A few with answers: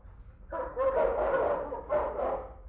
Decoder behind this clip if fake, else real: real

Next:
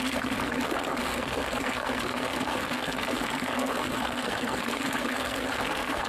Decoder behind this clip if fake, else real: fake, codec, SNAC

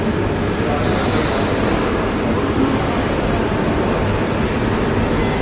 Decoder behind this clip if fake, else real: real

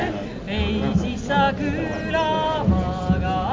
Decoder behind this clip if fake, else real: real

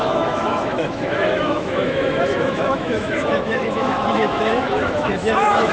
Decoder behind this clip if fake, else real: fake, autoencoder, DAC-VAE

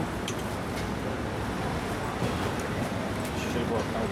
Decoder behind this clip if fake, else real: real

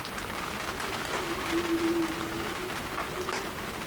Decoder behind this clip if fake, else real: real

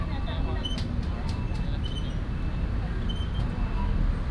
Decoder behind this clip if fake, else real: real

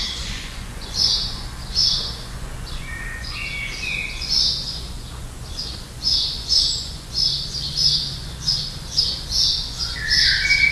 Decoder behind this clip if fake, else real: fake, vocoder, Vocos